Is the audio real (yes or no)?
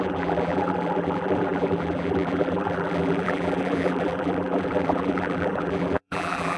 no